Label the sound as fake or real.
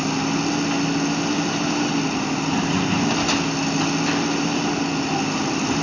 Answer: real